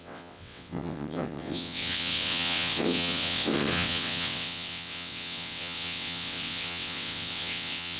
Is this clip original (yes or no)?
no